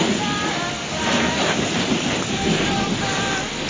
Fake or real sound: real